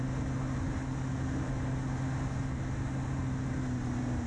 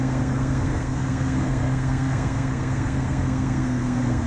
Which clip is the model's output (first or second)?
second